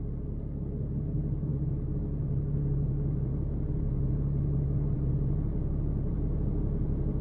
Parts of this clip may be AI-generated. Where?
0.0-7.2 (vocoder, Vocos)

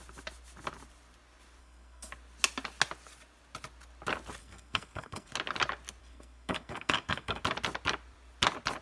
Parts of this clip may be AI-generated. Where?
1.6-2.1 (codec, SNAC); 4.4-5.3; 6.0-7.4

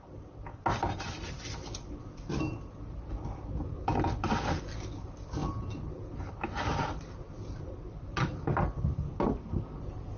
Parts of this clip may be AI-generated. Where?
none

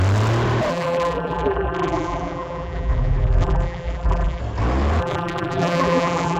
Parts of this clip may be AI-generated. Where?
0.7-4.4 (vocoder, BigVGAN v2); 5.0-6.4

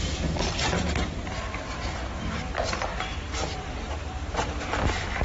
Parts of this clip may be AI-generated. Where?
0.0-2.9 (vocoder, BigVGAN v2)